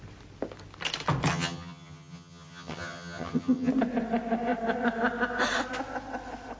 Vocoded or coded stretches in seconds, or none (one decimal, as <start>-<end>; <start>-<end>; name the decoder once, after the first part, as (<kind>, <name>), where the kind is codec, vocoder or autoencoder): 1.3-3.7 (vocoder, HiFi-GAN)